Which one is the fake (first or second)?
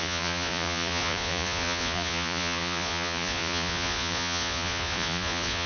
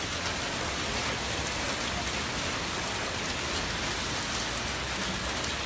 first